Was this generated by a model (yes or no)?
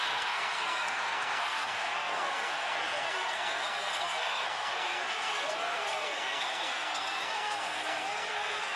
yes